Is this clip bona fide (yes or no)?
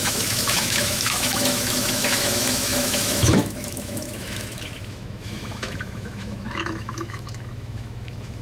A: no